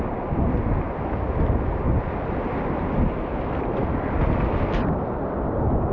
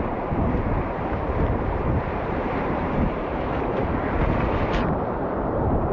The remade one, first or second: second